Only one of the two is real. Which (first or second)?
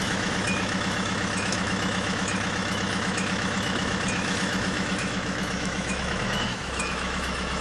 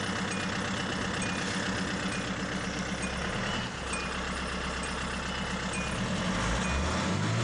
second